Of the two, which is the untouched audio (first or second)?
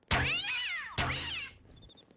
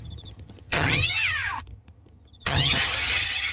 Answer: first